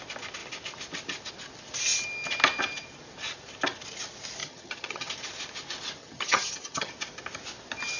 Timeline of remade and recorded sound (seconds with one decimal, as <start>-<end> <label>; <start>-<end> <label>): 0.0-4.4 recorded; 4.4-5.1 remade; 5.1-6.0 recorded; 6.0-6.9 remade; 6.9-8.0 recorded